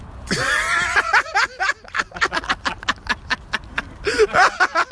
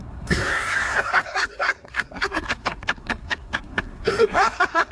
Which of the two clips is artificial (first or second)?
second